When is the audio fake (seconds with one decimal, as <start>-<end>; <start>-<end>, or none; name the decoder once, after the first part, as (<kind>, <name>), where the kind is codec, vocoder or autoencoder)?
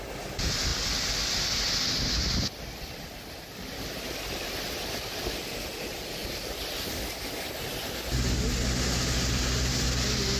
none